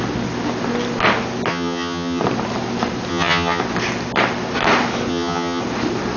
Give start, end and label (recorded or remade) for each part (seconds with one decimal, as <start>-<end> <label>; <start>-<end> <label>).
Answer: 0.0-1.5 recorded; 1.5-2.2 remade; 2.2-3.1 recorded; 3.1-3.6 remade; 3.6-5.1 recorded; 5.1-5.6 remade; 5.6-6.2 recorded